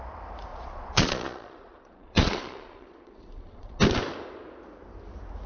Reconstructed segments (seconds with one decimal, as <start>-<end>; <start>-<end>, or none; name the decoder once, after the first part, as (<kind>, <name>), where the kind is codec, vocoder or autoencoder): 0.5-3.8 (vocoder, Vocos)